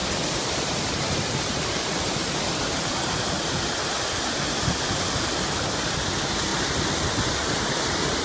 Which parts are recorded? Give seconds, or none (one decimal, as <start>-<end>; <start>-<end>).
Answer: 0.0-8.2